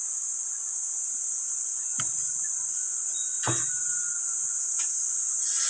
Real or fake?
real